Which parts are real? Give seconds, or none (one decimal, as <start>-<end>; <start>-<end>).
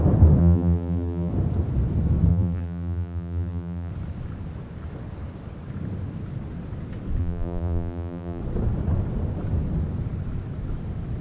0.0-0.4; 1.3-2.3; 3.9-7.2; 8.4-11.2